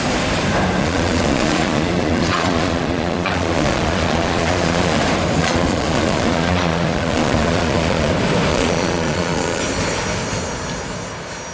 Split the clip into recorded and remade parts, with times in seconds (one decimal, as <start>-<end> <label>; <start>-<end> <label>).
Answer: 0.0-0.8 recorded; 0.8-5.0 remade; 5.0-5.4 recorded; 5.4-8.1 remade; 8.1-8.5 recorded; 8.5-9.6 remade; 9.6-11.5 recorded